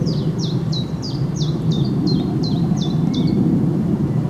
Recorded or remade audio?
remade